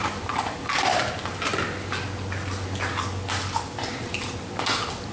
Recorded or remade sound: recorded